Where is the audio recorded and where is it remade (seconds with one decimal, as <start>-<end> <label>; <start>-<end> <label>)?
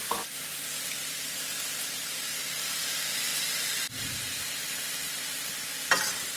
0.0-6.4 recorded